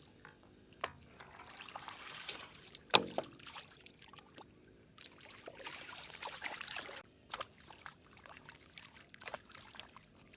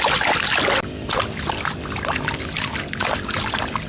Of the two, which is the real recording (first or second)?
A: second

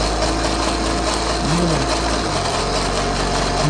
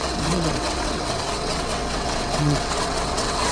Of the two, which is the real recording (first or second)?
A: first